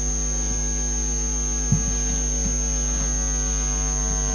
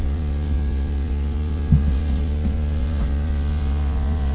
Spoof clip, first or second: second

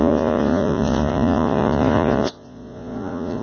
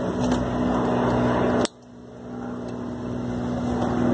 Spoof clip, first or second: first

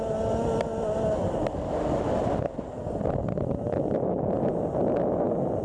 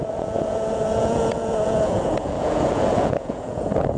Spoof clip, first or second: second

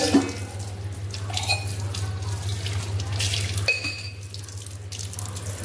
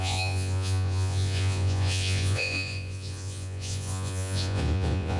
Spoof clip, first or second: second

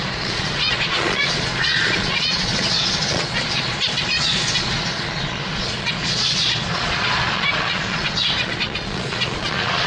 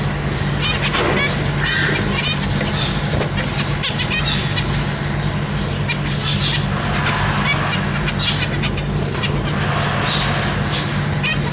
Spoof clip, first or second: first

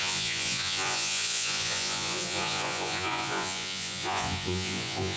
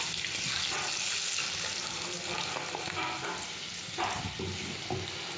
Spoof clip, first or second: first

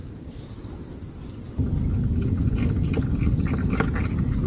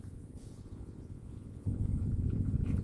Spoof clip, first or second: second